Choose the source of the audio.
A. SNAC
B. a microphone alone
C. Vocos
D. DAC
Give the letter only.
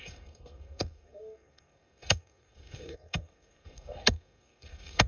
A